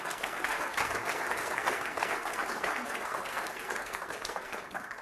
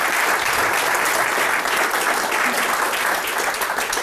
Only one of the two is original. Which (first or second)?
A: second